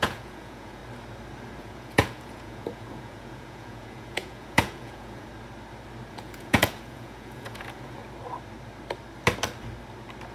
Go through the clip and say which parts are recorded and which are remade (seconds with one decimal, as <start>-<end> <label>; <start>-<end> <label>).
0.0-0.8 remade; 0.8-1.6 recorded; 1.6-5.3 remade; 5.3-6.1 recorded; 6.1-8.0 remade; 8.0-10.3 recorded